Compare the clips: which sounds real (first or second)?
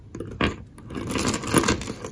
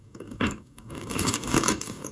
first